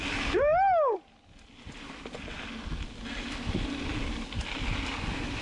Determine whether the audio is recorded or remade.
recorded